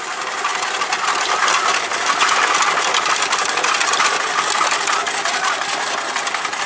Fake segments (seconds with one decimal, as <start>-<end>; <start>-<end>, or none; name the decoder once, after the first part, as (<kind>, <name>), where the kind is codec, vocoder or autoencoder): none